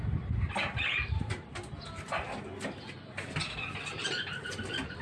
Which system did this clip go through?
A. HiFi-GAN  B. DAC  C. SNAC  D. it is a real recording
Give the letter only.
D